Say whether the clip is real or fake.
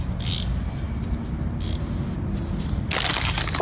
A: real